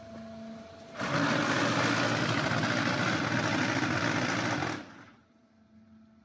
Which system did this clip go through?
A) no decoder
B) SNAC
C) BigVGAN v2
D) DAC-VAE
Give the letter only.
A